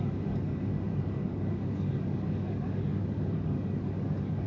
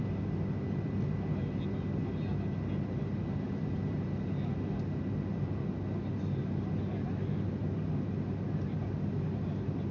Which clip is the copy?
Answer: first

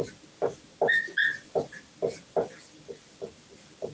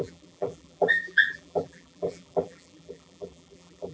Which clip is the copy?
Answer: second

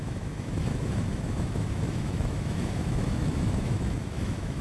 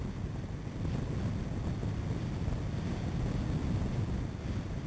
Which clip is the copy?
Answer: first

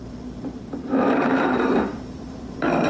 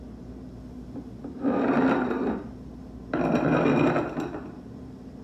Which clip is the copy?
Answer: first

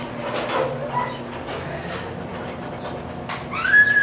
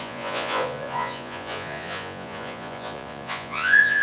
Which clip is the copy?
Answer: second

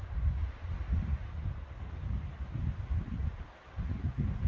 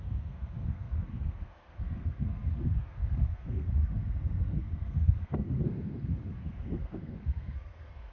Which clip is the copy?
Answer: second